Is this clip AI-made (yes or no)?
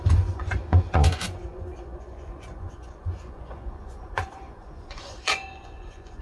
yes